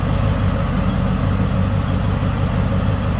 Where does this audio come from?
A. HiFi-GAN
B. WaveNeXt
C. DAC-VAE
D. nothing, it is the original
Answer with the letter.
D